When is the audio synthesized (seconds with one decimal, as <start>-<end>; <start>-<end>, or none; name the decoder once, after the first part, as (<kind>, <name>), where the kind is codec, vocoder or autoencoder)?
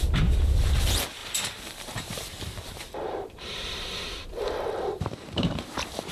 0.0-6.1 (vocoder, BigVGAN v2)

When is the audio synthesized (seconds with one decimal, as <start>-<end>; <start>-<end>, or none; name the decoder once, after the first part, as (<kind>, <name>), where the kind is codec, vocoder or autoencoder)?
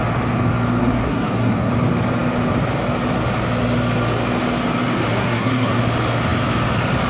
0.8-1.7 (codec, SNAC); 5.1-5.8